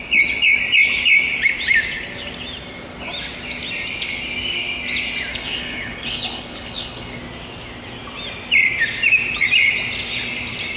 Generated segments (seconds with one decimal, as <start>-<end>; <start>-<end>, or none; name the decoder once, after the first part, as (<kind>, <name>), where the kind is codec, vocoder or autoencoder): 5.3-7.2 (codec, HILCodec)